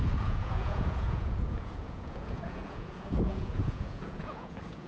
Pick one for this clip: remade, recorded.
remade